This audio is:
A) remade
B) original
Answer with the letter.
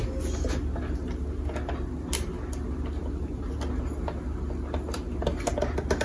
B